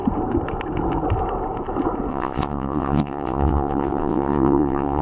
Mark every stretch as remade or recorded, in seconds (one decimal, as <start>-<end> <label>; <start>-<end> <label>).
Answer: 0.0-2.1 recorded; 2.1-5.0 remade

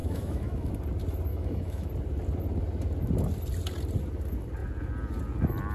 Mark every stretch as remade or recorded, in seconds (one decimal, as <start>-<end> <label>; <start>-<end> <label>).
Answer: 0.0-0.7 remade; 0.7-1.3 recorded; 1.3-1.9 remade; 1.9-5.7 recorded

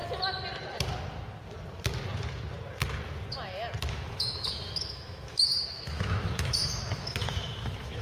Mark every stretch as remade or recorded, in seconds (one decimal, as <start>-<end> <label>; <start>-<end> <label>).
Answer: 0.0-3.9 recorded; 3.9-8.0 remade

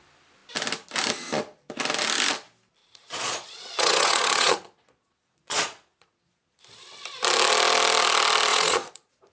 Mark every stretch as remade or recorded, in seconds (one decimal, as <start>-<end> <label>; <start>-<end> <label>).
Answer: 0.0-2.8 recorded; 2.8-6.6 remade; 6.6-8.5 recorded; 8.5-9.3 remade

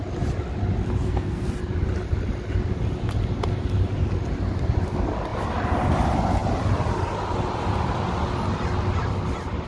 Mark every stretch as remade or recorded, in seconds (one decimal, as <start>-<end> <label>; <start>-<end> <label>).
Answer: 0.0-1.0 recorded; 1.0-1.5 remade; 1.5-9.7 recorded

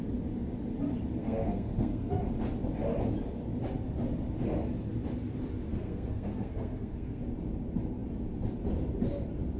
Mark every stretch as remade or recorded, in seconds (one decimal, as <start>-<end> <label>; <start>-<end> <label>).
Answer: 0.0-1.2 recorded; 1.2-2.1 remade; 2.1-5.7 recorded; 5.7-7.2 remade; 7.2-9.6 recorded

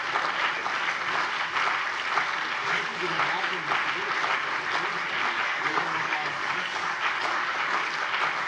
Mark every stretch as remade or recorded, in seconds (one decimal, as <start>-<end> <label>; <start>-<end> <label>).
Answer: 0.0-2.6 recorded; 2.6-3.2 remade; 3.2-5.4 recorded; 5.4-7.9 remade; 7.9-8.5 recorded